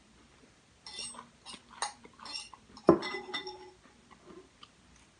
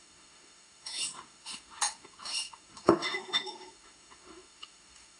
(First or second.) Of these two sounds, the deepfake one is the second